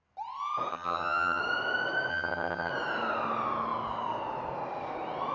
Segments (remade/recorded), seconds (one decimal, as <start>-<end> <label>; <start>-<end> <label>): 0.0-0.7 recorded; 0.7-1.4 remade; 1.4-2.1 recorded; 2.1-2.7 remade; 2.7-5.3 recorded